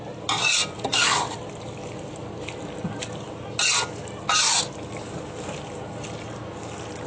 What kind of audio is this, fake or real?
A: real